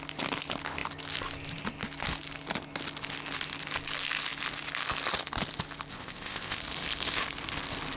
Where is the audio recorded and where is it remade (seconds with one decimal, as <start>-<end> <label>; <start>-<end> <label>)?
0.0-5.9 recorded; 5.9-6.6 remade; 6.6-8.0 recorded